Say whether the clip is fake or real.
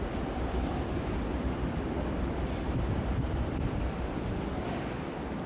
real